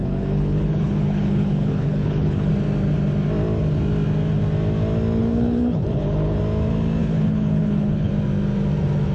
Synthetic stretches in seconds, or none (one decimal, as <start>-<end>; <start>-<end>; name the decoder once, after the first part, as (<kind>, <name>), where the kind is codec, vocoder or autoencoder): 0.0-2.5 (codec, HILCodec); 5.2-6.4; 7.0-8.1

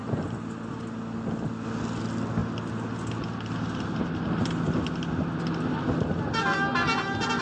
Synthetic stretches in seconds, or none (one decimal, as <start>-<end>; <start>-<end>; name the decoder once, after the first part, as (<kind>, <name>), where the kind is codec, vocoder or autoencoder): none